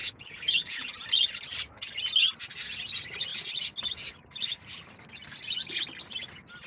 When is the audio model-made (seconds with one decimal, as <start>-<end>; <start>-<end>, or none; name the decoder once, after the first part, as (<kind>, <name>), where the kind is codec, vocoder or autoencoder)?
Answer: 0.0-0.9 (vocoder, Vocos)